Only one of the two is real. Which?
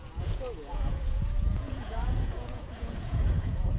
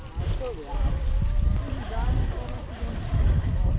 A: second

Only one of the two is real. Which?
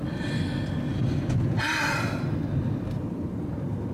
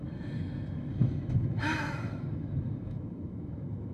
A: first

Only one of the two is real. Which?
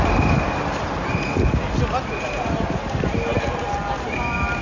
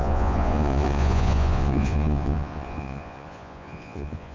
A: first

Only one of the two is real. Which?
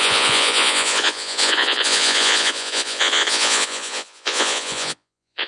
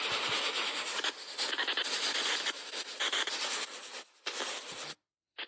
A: second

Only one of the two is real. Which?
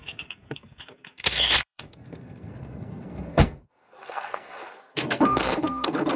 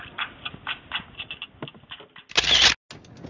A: second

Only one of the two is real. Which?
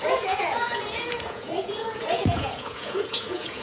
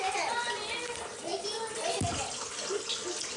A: second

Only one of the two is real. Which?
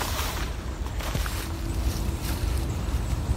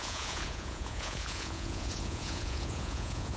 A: first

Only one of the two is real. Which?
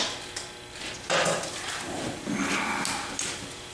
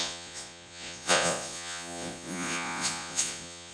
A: first